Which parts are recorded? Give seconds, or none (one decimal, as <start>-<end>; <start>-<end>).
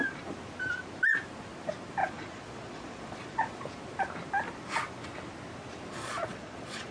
0.0-2.0; 3.6-6.0